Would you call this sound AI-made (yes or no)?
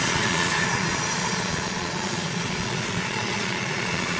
yes